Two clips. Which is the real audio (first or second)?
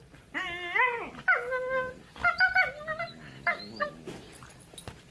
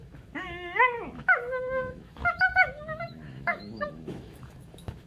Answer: first